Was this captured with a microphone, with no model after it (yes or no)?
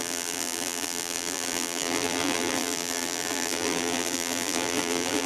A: no